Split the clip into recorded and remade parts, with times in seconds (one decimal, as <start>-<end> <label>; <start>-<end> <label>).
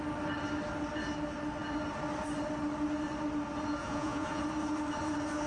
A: 0.0-3.8 recorded; 3.8-4.4 remade; 4.4-5.5 recorded